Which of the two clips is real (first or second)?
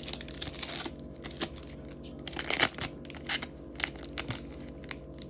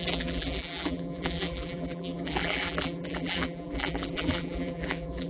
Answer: first